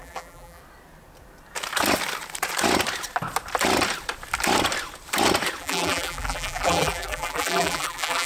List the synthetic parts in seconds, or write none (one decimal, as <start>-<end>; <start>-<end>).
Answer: 0.0-0.6; 5.6-8.3

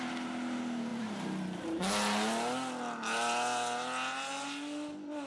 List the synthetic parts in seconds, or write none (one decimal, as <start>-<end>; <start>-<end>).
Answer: 0.9-1.8

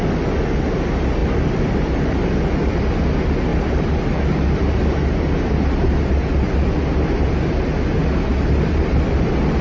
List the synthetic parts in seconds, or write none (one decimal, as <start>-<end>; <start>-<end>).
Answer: 3.5-7.3; 8.0-9.0

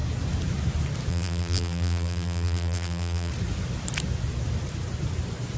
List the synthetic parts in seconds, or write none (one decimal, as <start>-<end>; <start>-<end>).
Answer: 1.1-3.3

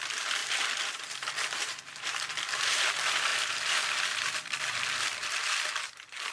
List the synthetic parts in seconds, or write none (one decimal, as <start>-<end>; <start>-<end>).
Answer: 0.4-1.8; 3.3-5.7

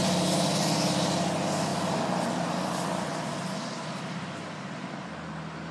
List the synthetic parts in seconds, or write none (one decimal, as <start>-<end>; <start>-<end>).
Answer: 0.0-0.7; 1.7-4.0

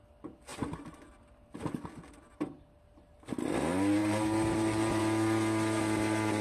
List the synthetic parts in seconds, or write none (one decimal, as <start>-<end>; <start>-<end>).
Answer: 4.0-5.0